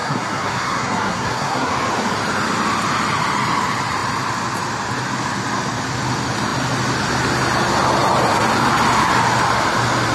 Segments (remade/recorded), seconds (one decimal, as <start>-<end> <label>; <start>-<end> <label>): 0.0-1.7 remade; 1.7-10.1 recorded